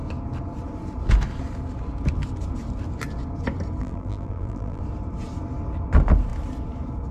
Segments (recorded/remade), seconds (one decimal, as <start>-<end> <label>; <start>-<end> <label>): 0.0-3.8 recorded; 3.8-4.8 remade; 4.8-7.1 recorded